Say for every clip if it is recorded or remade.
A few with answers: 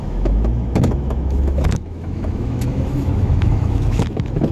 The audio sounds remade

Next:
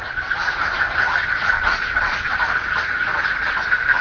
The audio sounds recorded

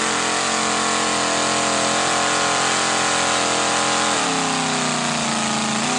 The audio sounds recorded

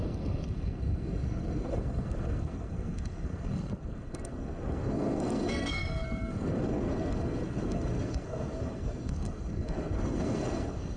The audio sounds remade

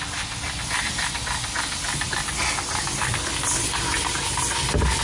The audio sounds recorded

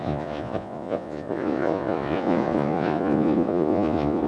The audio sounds remade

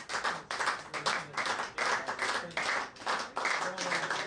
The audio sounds recorded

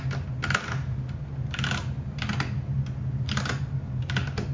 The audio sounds recorded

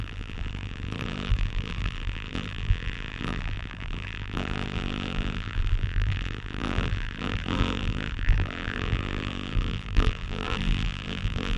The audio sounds remade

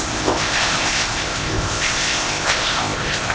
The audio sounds remade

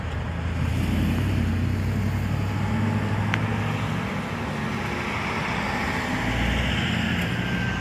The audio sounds recorded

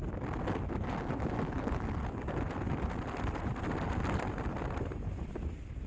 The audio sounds recorded